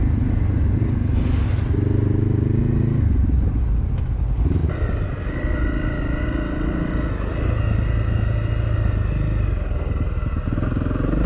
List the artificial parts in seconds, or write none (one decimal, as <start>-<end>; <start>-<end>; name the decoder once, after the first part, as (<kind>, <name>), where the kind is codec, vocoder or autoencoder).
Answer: none

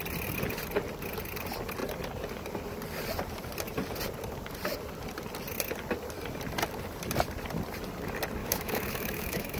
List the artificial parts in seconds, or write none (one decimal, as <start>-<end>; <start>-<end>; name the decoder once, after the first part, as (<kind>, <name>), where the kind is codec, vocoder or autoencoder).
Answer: 8.4-9.6 (autoencoder, DAC-VAE)

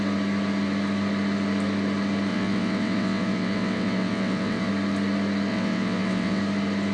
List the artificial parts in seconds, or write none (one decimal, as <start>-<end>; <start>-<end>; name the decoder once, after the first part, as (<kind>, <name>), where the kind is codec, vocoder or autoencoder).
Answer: 2.3-4.7 (vocoder, WaveNeXt); 5.5-6.4

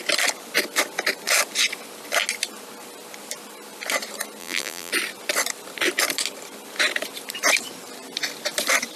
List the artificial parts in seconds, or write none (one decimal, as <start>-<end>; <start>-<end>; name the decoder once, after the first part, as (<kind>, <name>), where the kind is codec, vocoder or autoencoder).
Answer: 4.4-4.9 (vocoder, BigVGAN v2)

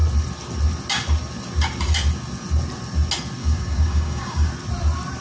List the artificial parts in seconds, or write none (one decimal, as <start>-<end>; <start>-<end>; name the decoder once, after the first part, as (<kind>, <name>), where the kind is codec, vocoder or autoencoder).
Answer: 3.4-4.5 (codec, DAC)

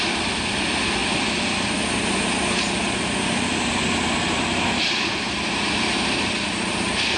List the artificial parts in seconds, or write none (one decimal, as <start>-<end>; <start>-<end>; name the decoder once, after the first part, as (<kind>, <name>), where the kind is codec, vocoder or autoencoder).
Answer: none

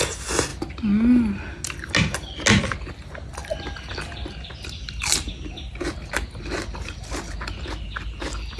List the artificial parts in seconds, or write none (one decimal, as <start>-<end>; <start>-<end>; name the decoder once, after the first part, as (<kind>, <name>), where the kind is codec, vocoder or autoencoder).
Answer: none

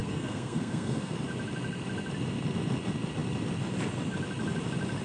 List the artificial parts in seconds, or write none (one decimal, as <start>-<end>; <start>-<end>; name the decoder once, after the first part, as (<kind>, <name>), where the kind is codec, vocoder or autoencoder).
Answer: 0.0-1.1 (codec, SNAC)